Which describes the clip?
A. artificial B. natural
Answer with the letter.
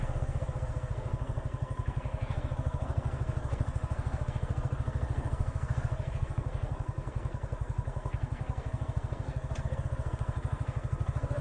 A